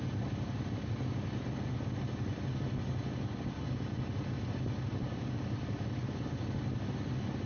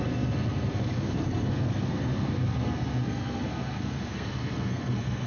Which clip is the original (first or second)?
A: first